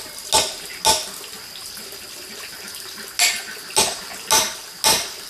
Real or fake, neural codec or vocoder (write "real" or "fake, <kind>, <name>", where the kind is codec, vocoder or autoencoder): real